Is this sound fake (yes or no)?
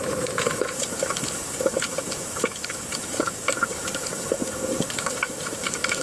yes